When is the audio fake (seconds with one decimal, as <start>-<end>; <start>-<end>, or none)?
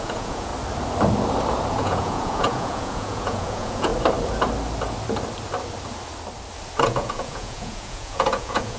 0.0-0.5; 1.7-3.9; 6.8-8.8